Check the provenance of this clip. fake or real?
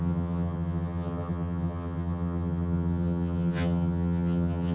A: fake